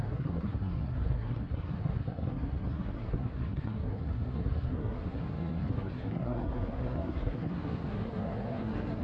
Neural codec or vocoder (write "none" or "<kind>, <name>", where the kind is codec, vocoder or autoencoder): codec, SNAC